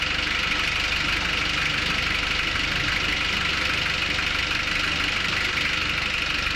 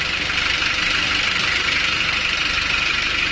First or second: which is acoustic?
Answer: first